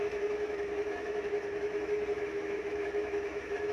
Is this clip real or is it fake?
fake